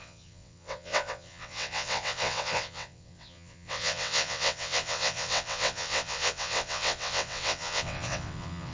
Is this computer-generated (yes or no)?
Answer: yes